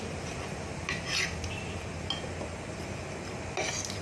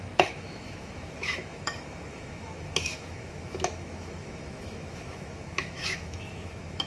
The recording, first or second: first